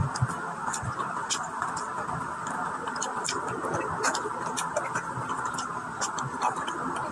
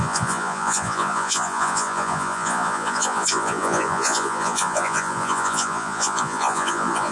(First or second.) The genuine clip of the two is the first